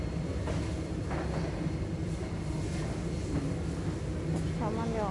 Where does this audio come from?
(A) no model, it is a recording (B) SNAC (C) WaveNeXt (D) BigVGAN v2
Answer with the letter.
A